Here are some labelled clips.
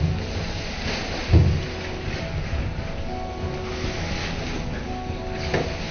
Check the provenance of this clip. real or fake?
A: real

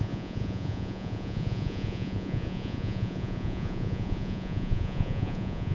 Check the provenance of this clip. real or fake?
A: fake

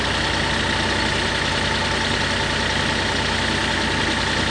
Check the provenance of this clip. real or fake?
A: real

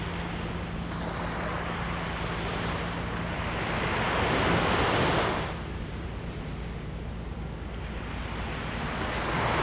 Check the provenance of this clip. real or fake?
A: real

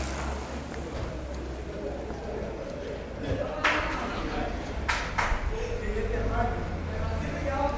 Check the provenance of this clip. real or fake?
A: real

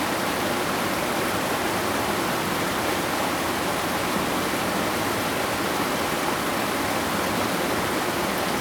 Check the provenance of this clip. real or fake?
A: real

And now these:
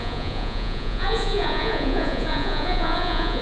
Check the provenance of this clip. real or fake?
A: fake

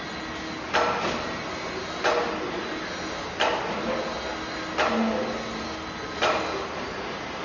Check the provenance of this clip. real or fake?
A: real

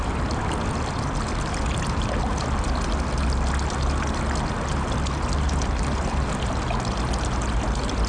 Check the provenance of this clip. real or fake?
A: real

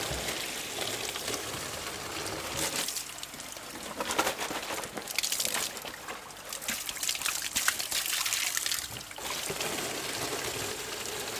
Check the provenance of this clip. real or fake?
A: real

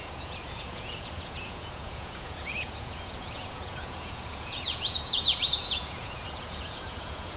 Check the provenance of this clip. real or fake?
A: fake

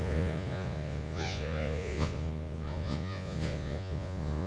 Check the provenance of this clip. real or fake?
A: fake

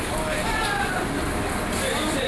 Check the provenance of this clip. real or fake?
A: real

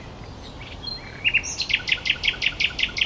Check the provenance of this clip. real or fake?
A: real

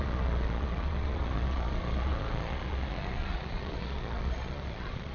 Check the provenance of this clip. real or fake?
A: fake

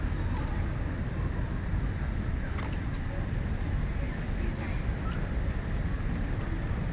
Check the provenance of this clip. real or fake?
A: real